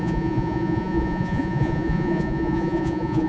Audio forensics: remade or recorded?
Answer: remade